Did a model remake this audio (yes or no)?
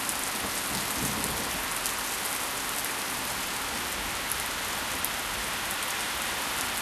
no